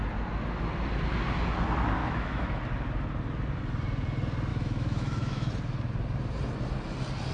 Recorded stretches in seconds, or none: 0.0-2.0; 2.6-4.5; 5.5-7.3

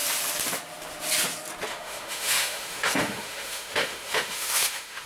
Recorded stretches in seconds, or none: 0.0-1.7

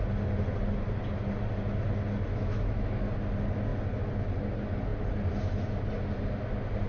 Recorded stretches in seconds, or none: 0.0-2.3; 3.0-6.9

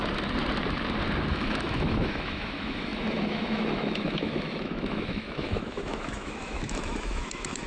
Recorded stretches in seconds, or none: 0.0-1.3